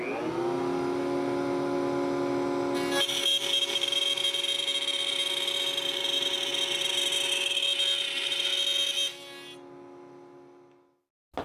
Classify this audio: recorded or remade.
recorded